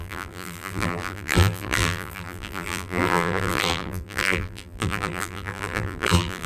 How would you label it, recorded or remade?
remade